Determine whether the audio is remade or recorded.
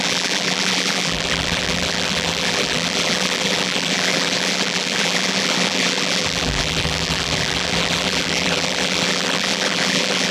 remade